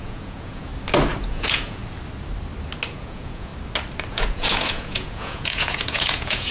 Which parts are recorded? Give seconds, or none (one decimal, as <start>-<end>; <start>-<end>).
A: 0.7-1.2; 1.8-2.9; 3.5-4.1